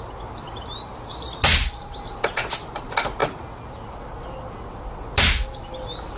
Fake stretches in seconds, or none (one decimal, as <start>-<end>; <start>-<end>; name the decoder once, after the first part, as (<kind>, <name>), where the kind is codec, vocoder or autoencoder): none